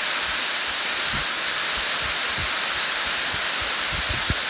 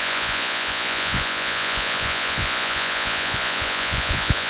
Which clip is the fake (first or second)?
second